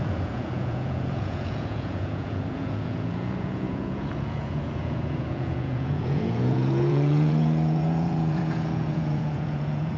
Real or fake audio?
fake